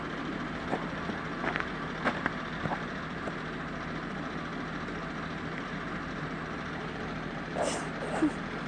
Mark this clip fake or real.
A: fake